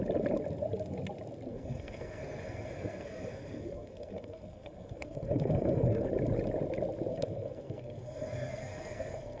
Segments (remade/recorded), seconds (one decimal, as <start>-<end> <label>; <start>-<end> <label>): 0.0-1.5 recorded; 1.5-6.1 remade; 6.1-7.1 recorded; 7.1-9.4 remade